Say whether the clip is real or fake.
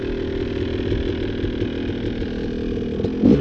real